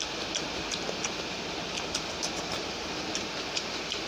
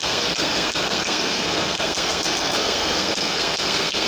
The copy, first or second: second